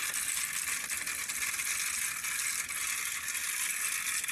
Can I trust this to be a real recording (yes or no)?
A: yes